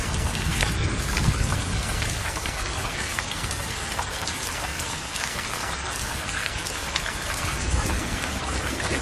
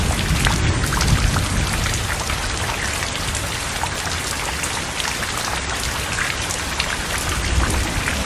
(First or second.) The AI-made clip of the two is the first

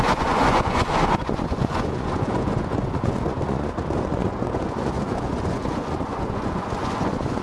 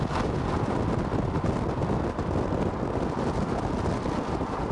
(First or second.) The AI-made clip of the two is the first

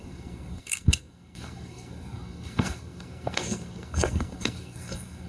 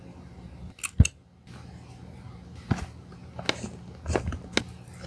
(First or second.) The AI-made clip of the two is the first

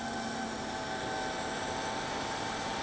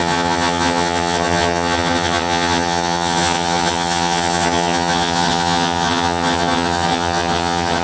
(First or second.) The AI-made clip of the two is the second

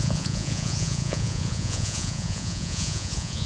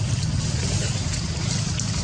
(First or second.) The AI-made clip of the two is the first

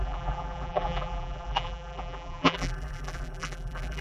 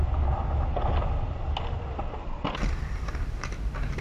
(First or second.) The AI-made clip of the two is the first